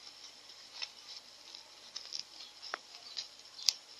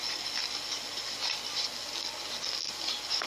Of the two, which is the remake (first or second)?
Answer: first